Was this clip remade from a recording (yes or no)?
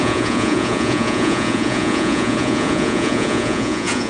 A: yes